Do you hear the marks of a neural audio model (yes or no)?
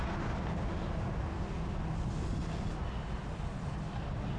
no